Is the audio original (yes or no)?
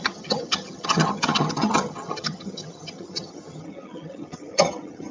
no